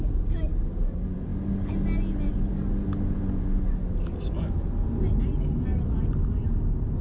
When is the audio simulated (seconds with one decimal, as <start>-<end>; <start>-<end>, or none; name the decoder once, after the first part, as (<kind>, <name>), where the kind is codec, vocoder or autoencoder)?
none